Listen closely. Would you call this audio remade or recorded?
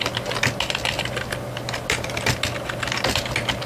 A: recorded